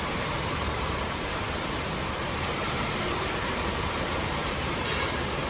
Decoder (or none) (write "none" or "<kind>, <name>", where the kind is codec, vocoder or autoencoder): vocoder, BigVGAN v2